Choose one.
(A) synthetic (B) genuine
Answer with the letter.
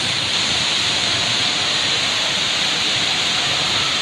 A